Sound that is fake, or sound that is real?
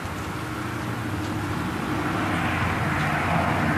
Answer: real